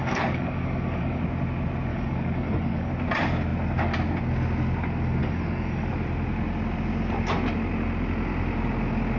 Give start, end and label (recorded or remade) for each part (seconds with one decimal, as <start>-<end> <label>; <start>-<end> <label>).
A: 0.0-1.2 remade; 1.2-1.9 recorded; 1.9-2.9 remade; 2.9-5.2 recorded; 5.2-5.9 remade; 5.9-9.2 recorded